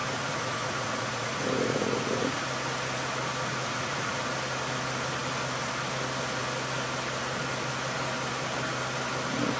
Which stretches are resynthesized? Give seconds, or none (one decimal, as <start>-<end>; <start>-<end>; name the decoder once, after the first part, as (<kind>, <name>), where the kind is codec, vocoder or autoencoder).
0.0-2.4 (vocoder, Vocos); 3.5-4.2